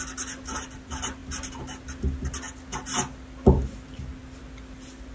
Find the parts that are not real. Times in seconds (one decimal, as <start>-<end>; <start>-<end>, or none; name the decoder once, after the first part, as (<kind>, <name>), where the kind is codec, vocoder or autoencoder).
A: none